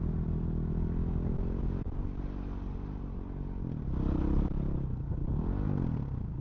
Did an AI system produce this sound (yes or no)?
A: no